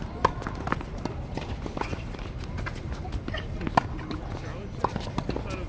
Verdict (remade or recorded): recorded